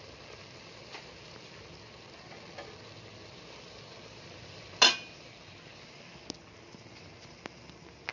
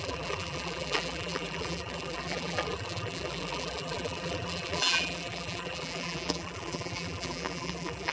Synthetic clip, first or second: second